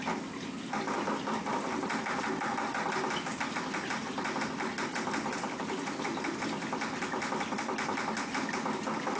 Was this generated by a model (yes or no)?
no